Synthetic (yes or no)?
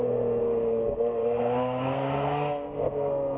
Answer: yes